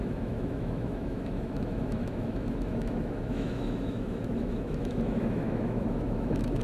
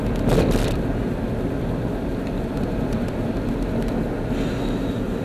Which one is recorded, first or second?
second